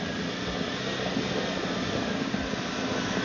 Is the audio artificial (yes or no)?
no